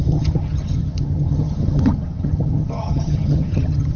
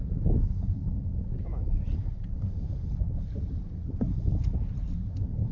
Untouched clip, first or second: second